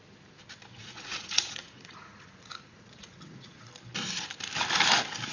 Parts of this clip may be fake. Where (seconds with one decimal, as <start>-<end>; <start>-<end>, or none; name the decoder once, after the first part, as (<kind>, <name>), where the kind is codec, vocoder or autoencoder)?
0.8-3.7 (vocoder, Vocos)